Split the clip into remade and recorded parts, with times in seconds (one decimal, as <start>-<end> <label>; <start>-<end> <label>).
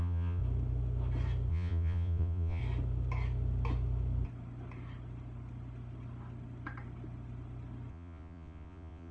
0.0-0.4 remade; 0.4-1.5 recorded; 1.5-2.6 remade; 2.6-7.9 recorded; 7.9-9.1 remade